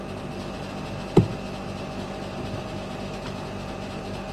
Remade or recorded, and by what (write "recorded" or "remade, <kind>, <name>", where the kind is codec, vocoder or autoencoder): recorded